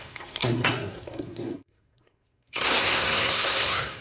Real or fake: fake